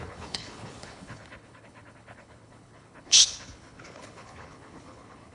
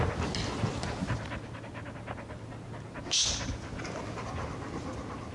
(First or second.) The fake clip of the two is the first